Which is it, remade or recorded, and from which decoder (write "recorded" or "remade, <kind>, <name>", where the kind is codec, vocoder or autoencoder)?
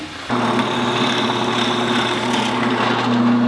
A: recorded